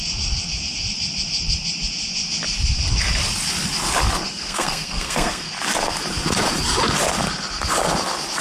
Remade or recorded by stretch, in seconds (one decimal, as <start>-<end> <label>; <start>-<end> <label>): 0.0-4.3 recorded; 4.3-5.5 remade; 5.5-8.4 recorded